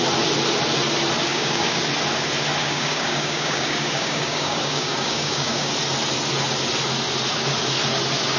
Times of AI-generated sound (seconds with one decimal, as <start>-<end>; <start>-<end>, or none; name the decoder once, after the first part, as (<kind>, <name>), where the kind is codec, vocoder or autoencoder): 1.3-1.8 (codec, DAC); 2.6-5.7